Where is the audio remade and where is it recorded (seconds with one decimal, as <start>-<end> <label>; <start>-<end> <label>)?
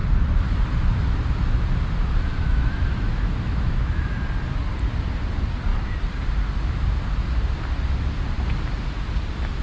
0.0-2.3 recorded; 2.3-4.2 remade; 4.2-9.6 recorded